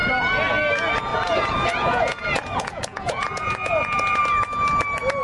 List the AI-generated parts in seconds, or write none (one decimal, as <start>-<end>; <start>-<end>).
1.1-4.2